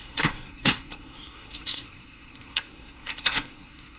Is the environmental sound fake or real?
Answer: fake